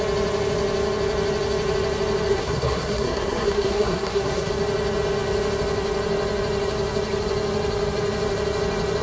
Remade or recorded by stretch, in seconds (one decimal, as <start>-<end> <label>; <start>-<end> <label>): 0.0-2.3 recorded; 2.3-4.5 remade; 4.5-9.0 recorded